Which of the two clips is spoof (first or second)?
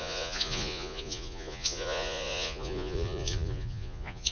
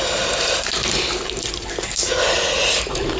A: first